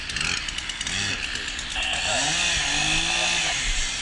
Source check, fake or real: real